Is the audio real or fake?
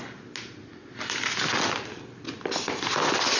real